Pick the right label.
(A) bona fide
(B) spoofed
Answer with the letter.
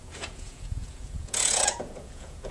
B